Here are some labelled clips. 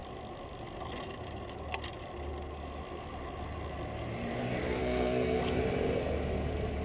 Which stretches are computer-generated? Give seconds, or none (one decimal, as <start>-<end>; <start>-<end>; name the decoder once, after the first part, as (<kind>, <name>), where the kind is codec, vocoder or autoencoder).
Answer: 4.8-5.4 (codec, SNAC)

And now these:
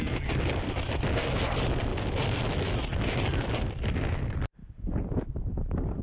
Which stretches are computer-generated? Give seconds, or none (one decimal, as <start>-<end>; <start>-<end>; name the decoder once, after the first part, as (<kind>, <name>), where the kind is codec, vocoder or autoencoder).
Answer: 4.6-5.3 (vocoder, Vocos)

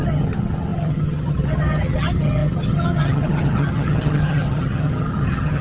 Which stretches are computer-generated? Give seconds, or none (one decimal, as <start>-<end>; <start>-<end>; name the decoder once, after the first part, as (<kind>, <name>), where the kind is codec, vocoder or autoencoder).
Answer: 0.0-5.6 (vocoder, HiFi-GAN)